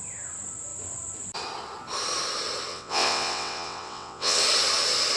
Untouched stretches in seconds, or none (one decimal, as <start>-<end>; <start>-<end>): 0.0-2.7; 4.4-5.2